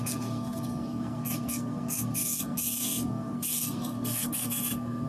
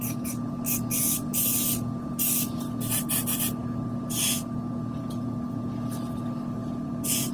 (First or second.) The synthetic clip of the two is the first